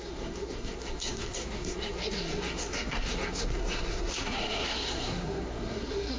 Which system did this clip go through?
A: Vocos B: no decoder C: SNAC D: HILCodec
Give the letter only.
C